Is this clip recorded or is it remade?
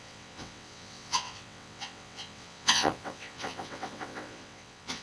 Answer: remade